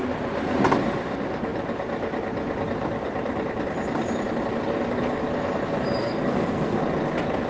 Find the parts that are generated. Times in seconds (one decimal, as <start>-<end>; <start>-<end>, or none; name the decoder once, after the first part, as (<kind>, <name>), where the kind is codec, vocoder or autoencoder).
6.0-6.8 (codec, SNAC)

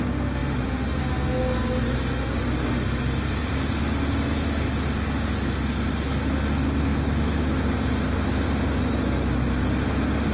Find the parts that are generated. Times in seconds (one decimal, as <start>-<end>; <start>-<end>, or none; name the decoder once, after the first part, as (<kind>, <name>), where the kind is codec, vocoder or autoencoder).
0.4-1.0 (vocoder, BigVGAN v2)

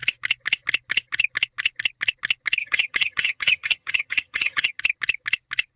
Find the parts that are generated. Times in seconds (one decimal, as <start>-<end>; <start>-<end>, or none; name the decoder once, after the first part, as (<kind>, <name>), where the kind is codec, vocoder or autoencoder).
2.6-4.8 (vocoder, HiFi-GAN)